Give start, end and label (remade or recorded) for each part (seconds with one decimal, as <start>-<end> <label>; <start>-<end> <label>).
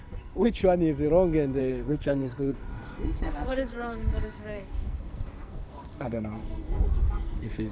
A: 0.0-0.6 remade; 0.6-1.6 recorded; 1.6-7.7 remade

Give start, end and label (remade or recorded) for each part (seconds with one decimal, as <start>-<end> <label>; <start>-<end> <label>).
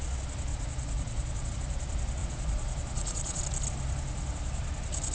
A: 0.0-0.5 recorded; 0.5-1.5 remade; 1.5-2.2 recorded; 2.2-3.4 remade; 3.4-5.1 recorded